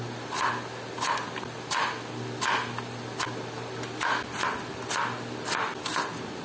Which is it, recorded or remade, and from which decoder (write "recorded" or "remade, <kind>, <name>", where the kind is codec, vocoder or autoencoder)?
recorded